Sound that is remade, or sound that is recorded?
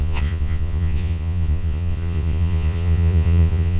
remade